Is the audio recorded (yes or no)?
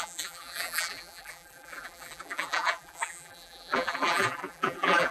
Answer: no